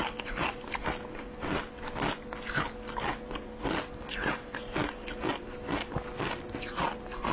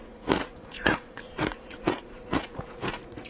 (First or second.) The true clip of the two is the first